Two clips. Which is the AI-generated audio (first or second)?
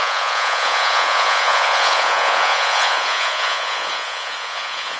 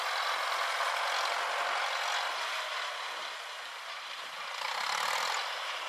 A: first